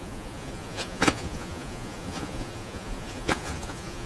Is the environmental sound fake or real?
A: fake